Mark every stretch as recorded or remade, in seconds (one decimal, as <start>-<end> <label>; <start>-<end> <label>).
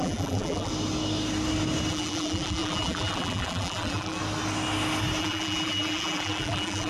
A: 0.0-0.7 remade; 0.7-1.9 recorded; 1.9-4.2 remade; 4.2-5.2 recorded; 5.2-6.9 remade